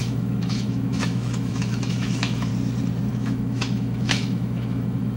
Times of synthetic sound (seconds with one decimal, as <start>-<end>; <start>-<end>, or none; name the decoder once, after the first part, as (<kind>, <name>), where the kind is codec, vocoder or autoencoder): 0.0-2.5 (autoencoder, DAC-VAE); 3.1-5.2